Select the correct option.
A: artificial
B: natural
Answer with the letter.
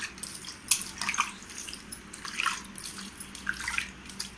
B